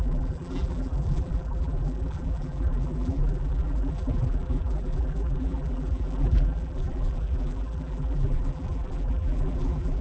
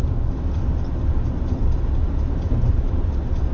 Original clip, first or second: second